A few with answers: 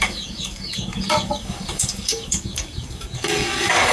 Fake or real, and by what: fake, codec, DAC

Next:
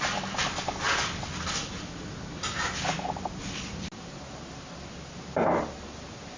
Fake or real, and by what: real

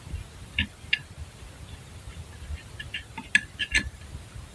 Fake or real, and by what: real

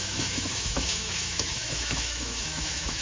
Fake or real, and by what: fake, autoencoder, DAC-VAE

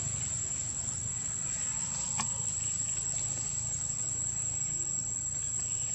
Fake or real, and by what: real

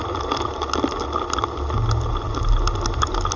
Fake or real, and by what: real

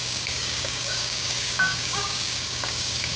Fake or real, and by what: fake, codec, DAC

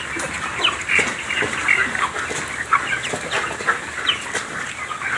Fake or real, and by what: real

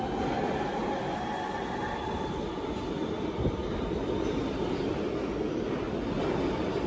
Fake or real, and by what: real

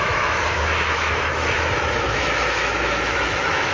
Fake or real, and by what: fake, autoencoder, DAC-VAE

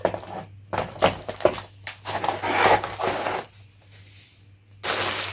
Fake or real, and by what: real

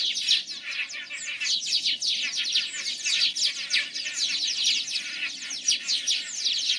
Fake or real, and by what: real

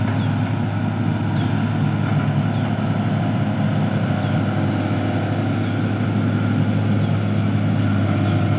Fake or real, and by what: real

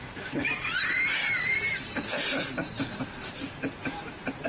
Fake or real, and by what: fake, vocoder, BigVGAN v2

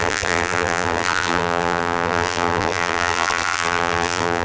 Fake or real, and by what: fake, vocoder, BigVGAN v2